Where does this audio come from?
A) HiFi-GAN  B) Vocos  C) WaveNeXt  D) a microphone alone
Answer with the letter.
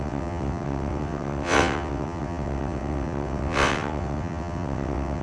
C